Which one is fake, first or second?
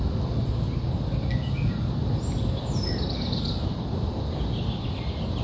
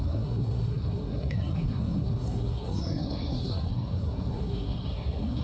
second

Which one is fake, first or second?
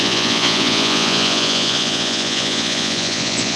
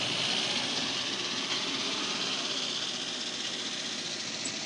first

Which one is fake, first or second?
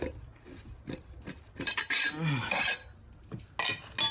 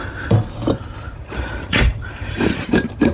second